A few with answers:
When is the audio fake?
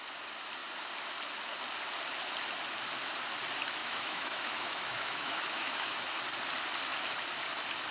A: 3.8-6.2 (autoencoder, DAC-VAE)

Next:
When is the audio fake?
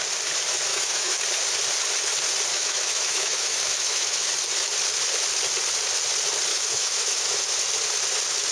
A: 0.7-1.2 (autoencoder, DAC-VAE); 2.5-4.3; 6.5-7.4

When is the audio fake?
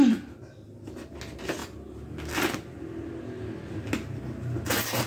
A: none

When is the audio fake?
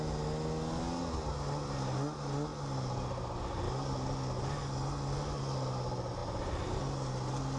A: none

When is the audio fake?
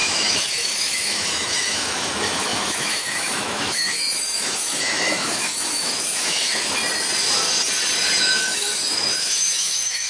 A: 0.0-6.8 (autoencoder, DAC-VAE); 8.2-10.1